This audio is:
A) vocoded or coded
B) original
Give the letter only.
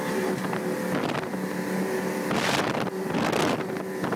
B